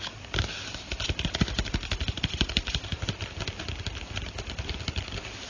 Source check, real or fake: real